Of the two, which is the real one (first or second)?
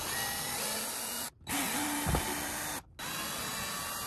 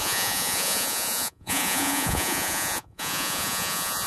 first